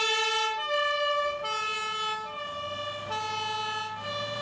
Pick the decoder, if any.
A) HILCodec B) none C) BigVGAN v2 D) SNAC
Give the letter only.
B